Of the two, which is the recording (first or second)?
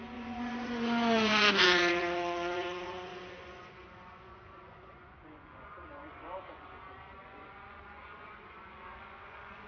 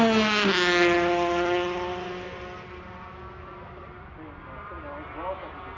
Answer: second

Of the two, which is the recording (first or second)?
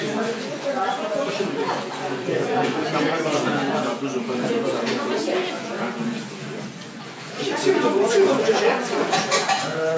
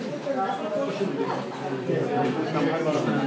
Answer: second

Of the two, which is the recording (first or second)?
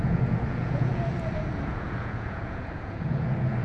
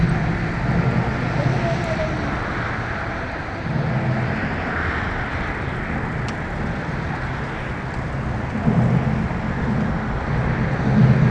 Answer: second